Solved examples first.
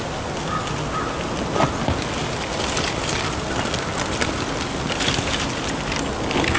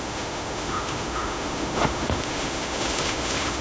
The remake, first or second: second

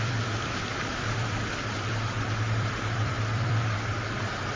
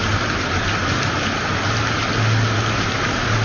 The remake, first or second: first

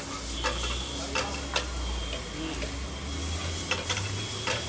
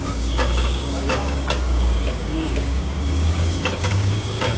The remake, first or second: second